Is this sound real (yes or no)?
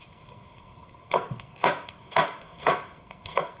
no